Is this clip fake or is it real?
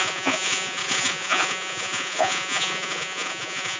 fake